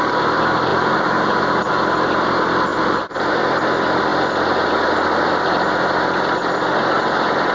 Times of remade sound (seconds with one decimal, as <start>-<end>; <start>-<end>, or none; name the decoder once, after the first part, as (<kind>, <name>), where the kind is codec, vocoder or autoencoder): 0.7-1.7 (vocoder, BigVGAN v2); 2.7-3.4